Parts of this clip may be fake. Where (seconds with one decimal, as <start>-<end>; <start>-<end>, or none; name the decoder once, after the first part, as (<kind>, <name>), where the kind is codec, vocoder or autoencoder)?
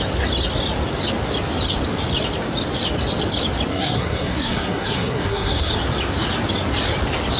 3.7-5.7 (codec, SNAC)